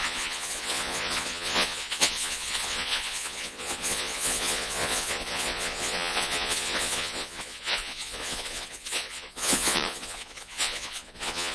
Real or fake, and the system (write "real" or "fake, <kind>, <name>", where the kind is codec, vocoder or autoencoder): fake, vocoder, Vocos